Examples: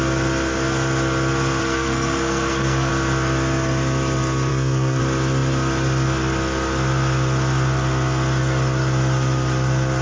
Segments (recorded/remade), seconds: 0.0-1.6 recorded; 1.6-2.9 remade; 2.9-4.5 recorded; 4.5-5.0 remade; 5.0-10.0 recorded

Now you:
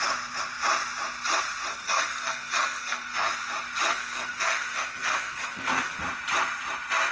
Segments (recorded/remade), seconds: 0.0-1.7 recorded; 1.7-3.3 remade; 3.3-3.9 recorded; 3.9-6.0 remade; 6.0-7.1 recorded

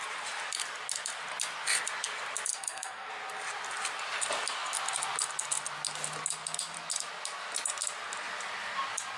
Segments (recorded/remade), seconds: 0.0-2.5 recorded; 2.5-3.1 remade; 3.1-9.2 recorded